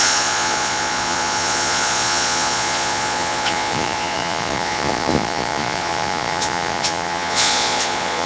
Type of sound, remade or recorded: remade